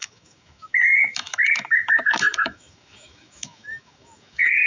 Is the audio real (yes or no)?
no